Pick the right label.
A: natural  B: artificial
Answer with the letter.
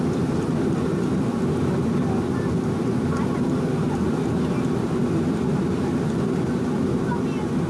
A